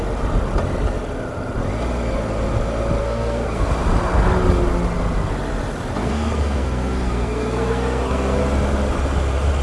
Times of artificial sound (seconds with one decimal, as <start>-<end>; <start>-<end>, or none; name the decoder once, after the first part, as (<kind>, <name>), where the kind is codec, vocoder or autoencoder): 3.0-3.7 (codec, SNAC); 6.0-8.4